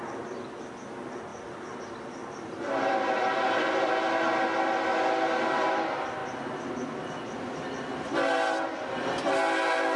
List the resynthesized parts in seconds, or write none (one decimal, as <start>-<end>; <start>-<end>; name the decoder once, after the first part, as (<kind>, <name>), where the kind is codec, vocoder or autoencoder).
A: 1.3-1.8 (vocoder, BigVGAN v2); 2.2-3.9